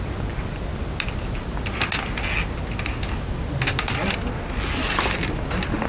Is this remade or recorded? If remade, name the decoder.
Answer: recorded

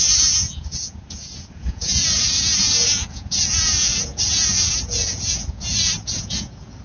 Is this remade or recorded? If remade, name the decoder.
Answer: remade, vocoder, Vocos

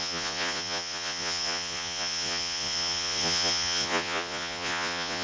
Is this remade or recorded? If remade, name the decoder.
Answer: remade, vocoder, Vocos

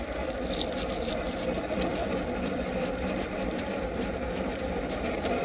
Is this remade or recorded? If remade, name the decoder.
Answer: remade, vocoder, BigVGAN v2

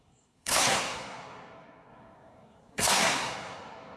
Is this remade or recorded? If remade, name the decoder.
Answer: remade, codec, SNAC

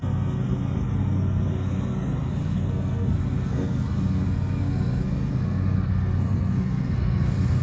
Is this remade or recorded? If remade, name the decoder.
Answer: remade, codec, SNAC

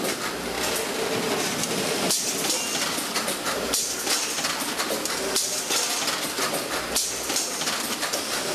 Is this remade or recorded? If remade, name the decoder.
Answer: recorded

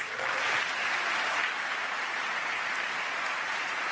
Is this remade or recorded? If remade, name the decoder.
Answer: recorded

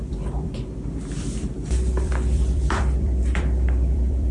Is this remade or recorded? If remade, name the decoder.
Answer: remade, vocoder, BigVGAN v2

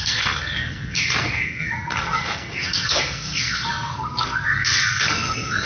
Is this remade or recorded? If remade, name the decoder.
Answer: remade, codec, SNAC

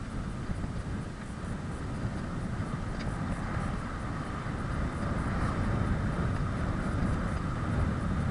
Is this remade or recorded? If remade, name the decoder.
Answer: recorded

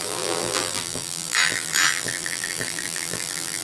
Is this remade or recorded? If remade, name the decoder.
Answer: remade, vocoder, BigVGAN v2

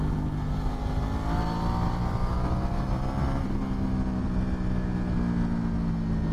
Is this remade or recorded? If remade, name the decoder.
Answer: recorded